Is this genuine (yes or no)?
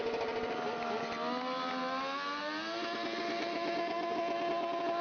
yes